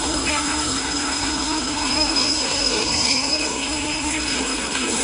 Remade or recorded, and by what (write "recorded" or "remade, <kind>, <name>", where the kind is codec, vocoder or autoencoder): remade, codec, SNAC